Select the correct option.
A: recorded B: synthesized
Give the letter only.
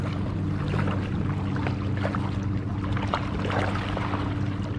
A